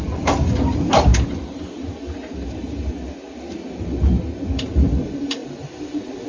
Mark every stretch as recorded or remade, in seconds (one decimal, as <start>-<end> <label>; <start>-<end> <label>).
0.0-6.3 recorded